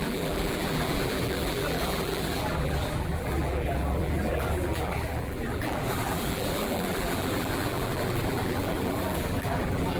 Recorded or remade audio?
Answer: remade